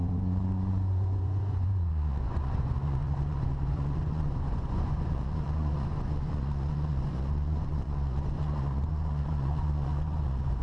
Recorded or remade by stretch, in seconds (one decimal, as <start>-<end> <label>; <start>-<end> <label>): 0.0-10.6 remade